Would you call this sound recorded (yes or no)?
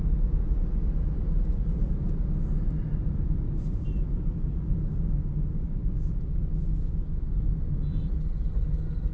yes